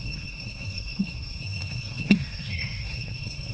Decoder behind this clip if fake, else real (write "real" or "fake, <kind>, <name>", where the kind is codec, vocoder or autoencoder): fake, codec, SNAC